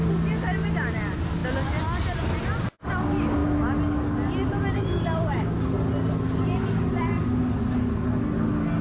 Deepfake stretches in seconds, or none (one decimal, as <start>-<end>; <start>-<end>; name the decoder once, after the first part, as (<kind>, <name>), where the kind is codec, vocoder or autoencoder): none